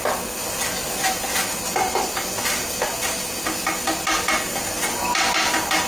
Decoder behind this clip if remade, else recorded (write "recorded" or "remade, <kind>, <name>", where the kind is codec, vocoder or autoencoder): recorded